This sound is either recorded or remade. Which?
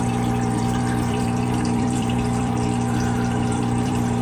remade